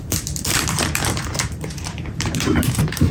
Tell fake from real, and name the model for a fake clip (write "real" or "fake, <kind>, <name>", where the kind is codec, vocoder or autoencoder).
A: fake, vocoder, BigVGAN v2